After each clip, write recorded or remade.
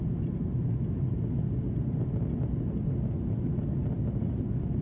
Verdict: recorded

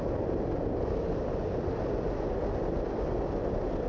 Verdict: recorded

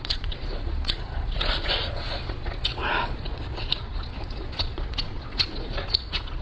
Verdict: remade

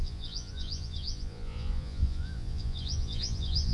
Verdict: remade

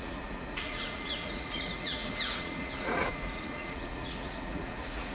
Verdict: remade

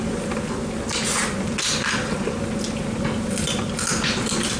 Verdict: recorded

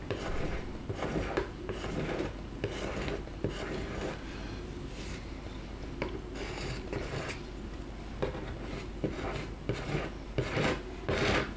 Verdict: recorded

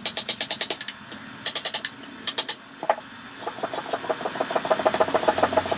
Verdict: recorded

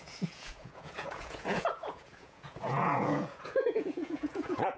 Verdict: remade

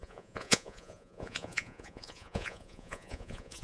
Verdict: remade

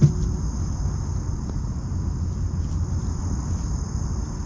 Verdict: recorded